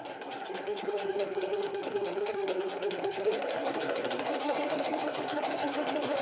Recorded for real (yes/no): no